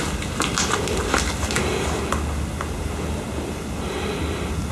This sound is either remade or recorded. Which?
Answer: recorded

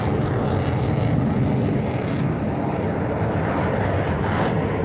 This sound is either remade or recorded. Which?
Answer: recorded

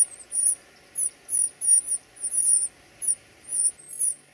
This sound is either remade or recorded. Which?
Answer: recorded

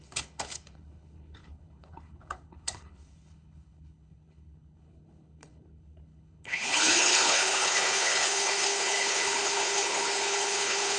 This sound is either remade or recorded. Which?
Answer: remade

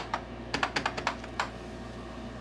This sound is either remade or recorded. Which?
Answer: recorded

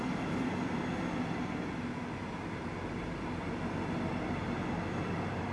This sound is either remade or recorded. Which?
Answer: recorded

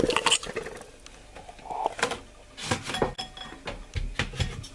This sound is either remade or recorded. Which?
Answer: recorded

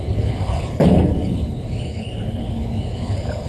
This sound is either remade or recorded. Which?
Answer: remade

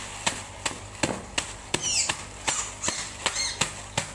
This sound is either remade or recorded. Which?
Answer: recorded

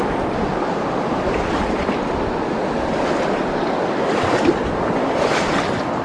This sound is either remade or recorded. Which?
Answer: recorded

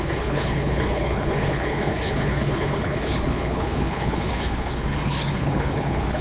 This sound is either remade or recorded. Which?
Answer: remade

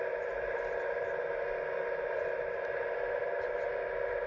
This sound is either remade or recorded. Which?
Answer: recorded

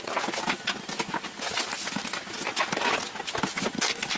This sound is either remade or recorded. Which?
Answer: recorded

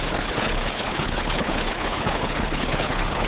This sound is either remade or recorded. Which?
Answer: remade